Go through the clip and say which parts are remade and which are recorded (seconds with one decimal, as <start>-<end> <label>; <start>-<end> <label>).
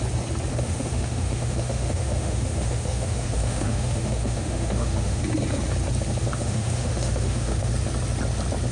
0.0-0.5 recorded; 0.5-5.2 remade; 5.2-6.3 recorded; 6.3-7.7 remade; 7.7-8.7 recorded